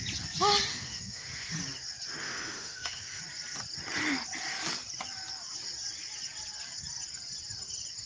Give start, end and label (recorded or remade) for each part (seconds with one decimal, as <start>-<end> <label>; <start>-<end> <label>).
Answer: 0.0-0.7 recorded; 0.7-1.5 remade; 1.5-2.2 recorded; 2.2-3.2 remade; 3.2-8.1 recorded